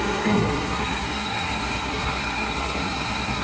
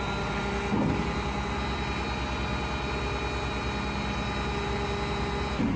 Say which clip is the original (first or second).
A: second